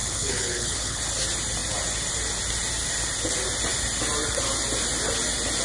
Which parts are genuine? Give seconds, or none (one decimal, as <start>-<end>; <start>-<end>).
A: 1.0-5.6